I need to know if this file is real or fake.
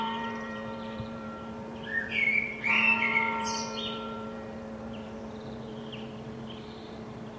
fake